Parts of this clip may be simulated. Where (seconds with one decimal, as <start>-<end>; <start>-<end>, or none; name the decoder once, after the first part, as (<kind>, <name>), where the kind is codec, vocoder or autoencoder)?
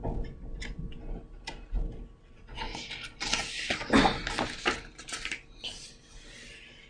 2.2-2.7 (vocoder, WaveNeXt)